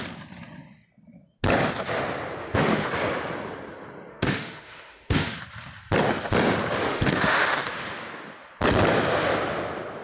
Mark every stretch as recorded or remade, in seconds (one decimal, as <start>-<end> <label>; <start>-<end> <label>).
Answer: 0.0-2.4 recorded; 2.4-2.9 remade; 2.9-4.1 recorded; 4.1-5.4 remade; 5.4-6.8 recorded; 6.8-7.7 remade; 7.7-10.0 recorded